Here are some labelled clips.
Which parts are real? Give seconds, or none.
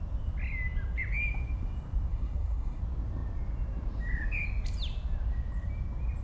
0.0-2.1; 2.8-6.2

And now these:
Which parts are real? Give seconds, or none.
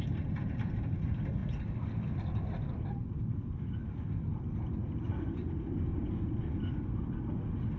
0.0-7.8